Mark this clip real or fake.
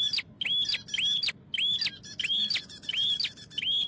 real